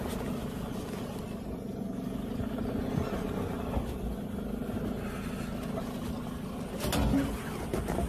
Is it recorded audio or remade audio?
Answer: recorded